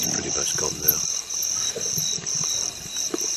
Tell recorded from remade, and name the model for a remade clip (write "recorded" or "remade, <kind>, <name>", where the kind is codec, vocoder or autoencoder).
remade, vocoder, BigVGAN v2